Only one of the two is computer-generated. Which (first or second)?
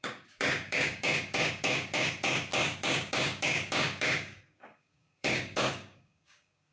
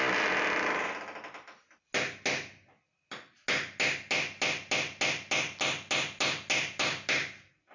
first